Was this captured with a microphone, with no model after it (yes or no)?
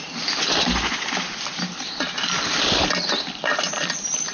yes